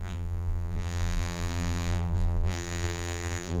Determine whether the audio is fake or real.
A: fake